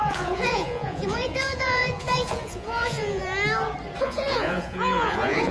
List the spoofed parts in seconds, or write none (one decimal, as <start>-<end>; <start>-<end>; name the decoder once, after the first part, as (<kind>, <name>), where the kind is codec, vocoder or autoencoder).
0.0-3.2 (vocoder, Vocos); 4.0-5.5